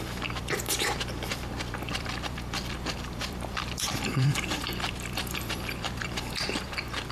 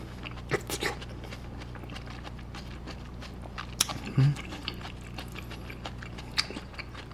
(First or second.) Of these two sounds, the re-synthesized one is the first